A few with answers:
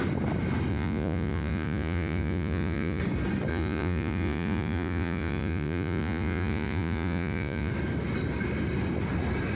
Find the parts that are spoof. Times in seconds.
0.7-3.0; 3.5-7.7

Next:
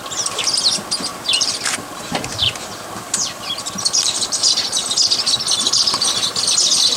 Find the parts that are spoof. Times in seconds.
1.1-4.9

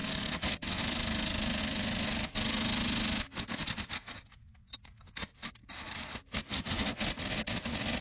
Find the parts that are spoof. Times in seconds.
5.6-6.2